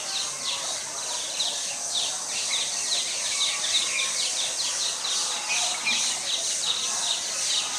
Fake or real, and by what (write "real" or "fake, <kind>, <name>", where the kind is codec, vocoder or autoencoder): real